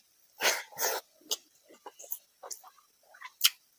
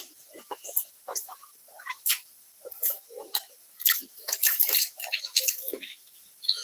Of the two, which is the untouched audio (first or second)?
first